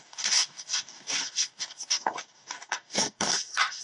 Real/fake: fake